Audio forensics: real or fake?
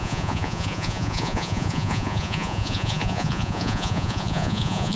fake